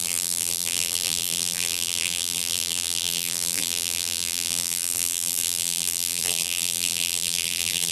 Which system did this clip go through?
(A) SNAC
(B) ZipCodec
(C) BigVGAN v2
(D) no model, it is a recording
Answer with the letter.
C